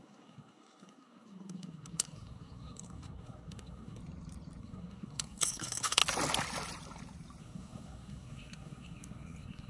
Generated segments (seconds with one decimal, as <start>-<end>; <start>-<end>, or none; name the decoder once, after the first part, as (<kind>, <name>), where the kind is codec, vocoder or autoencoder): 0.0-4.0 (codec, SNAC); 4.6-6.0; 7.4-9.7